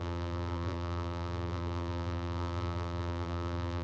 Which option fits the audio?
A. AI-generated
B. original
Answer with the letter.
A